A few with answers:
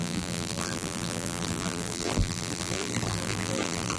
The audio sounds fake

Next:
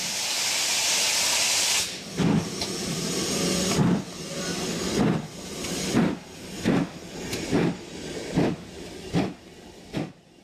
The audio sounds real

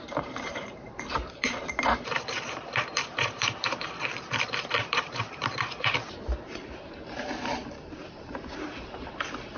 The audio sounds fake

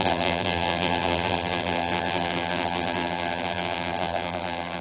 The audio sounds fake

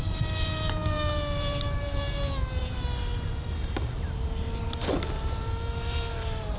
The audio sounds fake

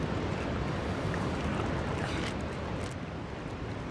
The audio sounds fake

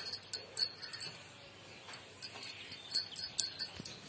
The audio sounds real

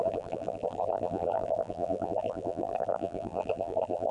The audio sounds fake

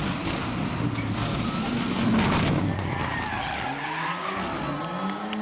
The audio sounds real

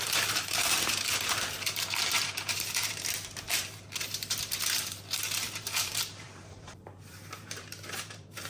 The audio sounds fake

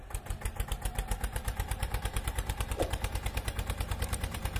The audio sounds fake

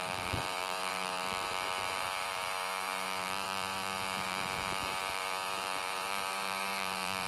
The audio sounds fake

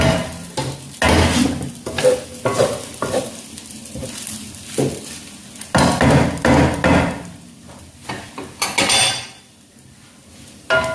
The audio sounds real